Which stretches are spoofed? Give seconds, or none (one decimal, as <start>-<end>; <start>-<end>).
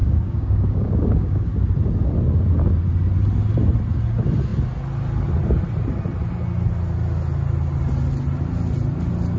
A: 0.0-1.5